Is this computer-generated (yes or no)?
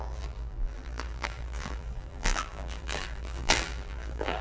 yes